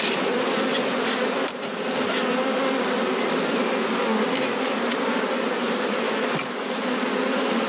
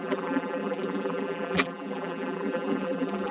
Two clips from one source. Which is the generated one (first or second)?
second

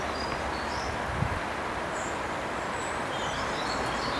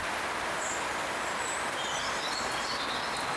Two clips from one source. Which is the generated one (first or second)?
first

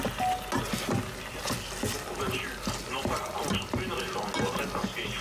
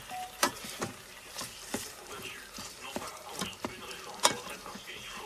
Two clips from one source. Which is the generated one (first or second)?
second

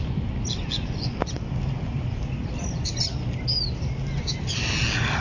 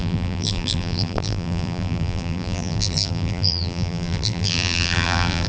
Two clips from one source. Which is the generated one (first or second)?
second